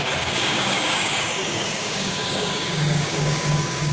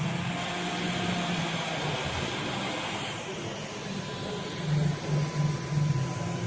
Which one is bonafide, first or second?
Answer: second